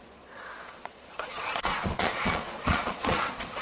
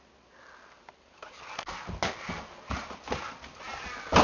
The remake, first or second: first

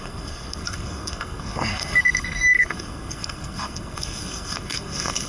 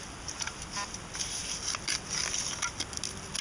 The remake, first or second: first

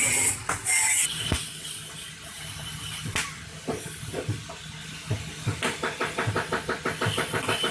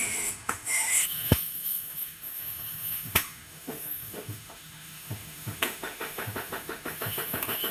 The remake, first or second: second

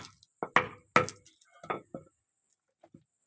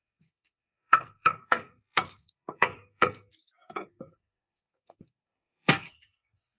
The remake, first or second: second